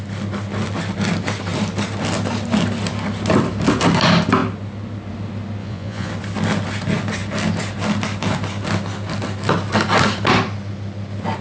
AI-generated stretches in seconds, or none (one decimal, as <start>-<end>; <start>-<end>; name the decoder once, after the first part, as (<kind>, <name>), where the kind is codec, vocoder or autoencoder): 5.6-6.1 (vocoder, Vocos)